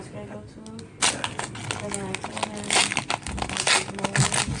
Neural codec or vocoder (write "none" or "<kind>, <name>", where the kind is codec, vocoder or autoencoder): none